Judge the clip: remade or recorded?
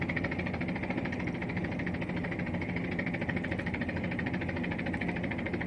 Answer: recorded